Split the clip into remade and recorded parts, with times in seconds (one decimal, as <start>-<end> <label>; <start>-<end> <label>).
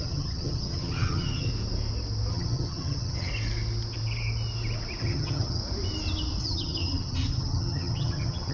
0.0-1.5 remade; 1.5-2.3 recorded; 2.3-3.3 remade; 3.3-5.0 recorded; 5.0-5.6 remade; 5.6-6.4 recorded; 6.4-8.5 remade